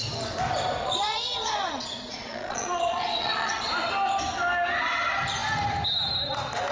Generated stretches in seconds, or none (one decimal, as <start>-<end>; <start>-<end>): 0.8-3.7